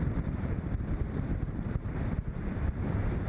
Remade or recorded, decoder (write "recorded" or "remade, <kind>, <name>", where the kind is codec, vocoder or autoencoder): remade, vocoder, BigVGAN v2